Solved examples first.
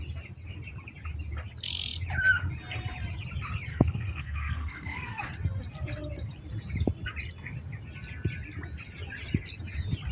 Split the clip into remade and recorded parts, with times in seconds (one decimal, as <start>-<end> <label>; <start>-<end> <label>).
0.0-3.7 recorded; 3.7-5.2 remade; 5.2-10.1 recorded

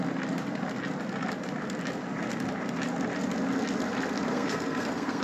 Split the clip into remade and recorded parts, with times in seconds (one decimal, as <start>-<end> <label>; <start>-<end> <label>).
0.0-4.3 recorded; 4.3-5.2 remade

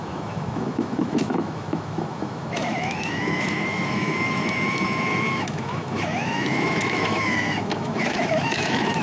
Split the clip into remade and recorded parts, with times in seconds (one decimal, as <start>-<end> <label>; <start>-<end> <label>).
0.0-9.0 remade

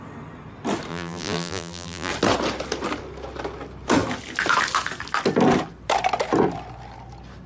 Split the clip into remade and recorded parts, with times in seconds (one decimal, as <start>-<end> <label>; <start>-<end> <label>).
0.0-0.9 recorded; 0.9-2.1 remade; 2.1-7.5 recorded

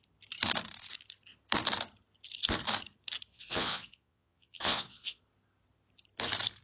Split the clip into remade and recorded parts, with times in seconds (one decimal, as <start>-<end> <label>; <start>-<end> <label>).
0.0-3.3 recorded; 3.3-5.2 remade; 5.2-6.6 recorded

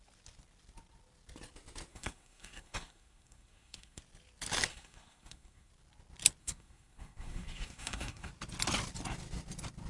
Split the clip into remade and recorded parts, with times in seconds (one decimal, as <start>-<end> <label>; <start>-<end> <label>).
0.0-1.9 recorded; 1.9-4.0 remade; 4.0-4.7 recorded; 4.7-5.7 remade; 5.7-6.4 recorded; 6.4-8.3 remade; 8.3-9.9 recorded

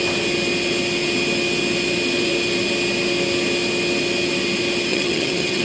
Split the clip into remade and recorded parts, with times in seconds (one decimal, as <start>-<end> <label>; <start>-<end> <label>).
0.0-4.9 recorded; 4.9-5.6 remade

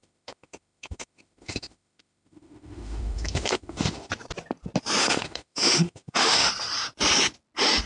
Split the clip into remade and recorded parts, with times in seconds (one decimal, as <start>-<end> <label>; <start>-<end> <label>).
0.0-4.1 remade; 4.1-5.0 recorded; 5.0-6.5 remade; 6.5-7.9 recorded